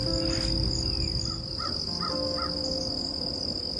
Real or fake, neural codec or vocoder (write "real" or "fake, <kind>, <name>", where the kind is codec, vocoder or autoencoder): real